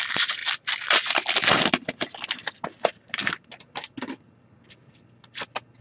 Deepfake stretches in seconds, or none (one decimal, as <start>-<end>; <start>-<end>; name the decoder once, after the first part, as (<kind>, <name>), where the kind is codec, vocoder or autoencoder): none